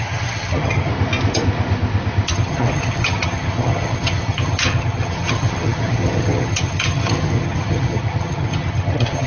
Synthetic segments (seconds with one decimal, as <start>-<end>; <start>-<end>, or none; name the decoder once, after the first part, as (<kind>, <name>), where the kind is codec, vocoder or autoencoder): 0.0-0.9 (vocoder, HiFi-GAN); 2.3-9.3